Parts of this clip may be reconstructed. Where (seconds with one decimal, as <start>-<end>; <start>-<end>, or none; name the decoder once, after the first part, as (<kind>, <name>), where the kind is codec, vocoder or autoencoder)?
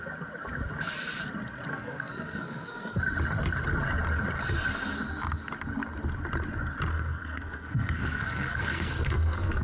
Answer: 1.7-3.0 (codec, SNAC); 6.9-9.6